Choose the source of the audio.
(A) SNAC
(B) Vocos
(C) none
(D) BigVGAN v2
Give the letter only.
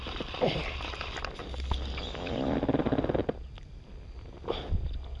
C